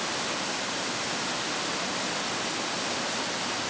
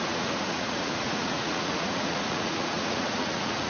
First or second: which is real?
first